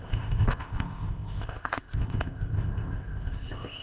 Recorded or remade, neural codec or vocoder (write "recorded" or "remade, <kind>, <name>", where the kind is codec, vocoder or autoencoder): remade, codec, ZipCodec